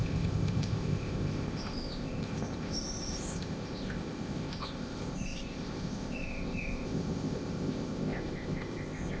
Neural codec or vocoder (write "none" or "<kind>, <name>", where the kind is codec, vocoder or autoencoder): codec, ZipCodec